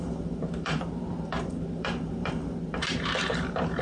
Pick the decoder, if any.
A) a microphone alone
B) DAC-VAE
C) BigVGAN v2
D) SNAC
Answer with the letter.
C